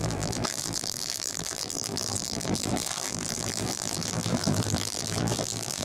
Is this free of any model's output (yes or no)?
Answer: no